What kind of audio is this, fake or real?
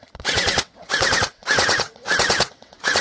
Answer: fake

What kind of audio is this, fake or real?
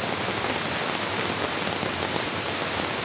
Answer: real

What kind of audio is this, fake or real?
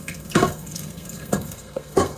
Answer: fake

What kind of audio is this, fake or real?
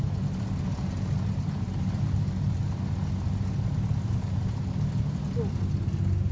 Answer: real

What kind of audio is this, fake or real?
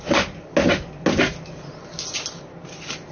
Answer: real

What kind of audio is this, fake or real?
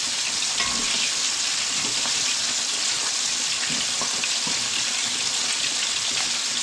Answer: real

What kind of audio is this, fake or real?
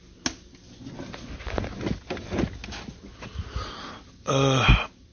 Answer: real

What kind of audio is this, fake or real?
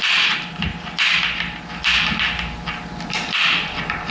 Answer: fake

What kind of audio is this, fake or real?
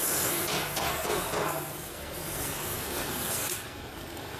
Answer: fake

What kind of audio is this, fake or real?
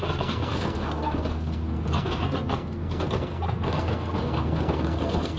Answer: fake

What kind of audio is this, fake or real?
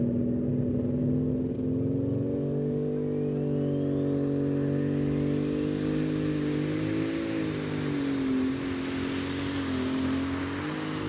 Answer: real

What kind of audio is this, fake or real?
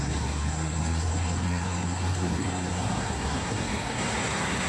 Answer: fake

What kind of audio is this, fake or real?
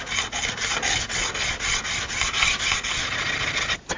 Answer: real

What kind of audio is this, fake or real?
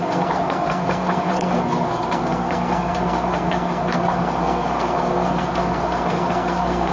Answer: fake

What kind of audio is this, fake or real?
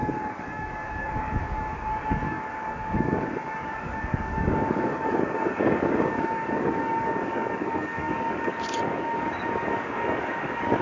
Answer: fake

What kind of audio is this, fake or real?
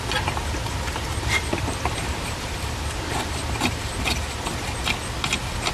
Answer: real